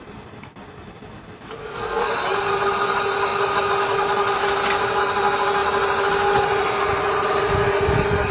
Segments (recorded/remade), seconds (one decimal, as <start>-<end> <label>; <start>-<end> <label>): 0.0-1.6 recorded; 1.6-2.1 remade; 2.1-8.3 recorded